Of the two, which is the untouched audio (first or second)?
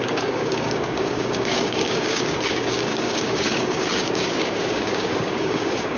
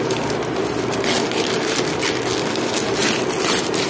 second